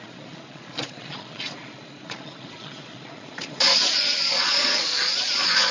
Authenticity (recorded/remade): remade